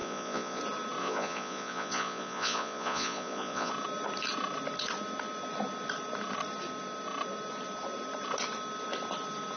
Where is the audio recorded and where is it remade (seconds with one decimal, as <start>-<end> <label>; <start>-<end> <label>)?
0.0-0.6 remade; 0.6-1.0 recorded; 1.0-3.7 remade; 3.7-9.6 recorded